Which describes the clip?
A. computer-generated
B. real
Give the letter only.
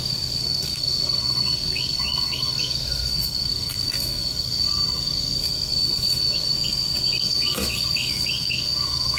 A